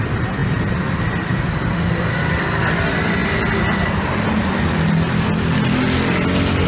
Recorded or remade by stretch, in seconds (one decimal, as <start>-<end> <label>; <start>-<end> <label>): 0.0-6.7 recorded